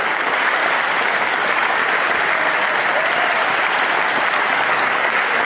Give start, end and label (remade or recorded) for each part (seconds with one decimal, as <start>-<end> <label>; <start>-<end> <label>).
0.0-0.6 remade; 0.6-1.3 recorded; 1.3-1.8 remade; 1.8-4.4 recorded; 4.4-5.4 remade